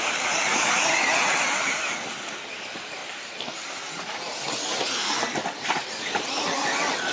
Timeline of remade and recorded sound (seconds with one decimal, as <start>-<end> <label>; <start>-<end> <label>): 0.0-7.1 recorded